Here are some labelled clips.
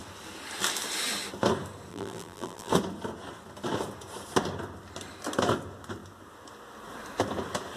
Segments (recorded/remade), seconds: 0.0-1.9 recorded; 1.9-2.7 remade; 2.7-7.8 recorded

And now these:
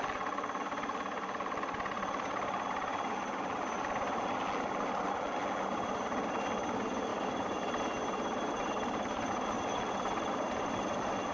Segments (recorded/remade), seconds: 0.0-7.1 recorded; 7.1-9.3 remade; 9.3-11.3 recorded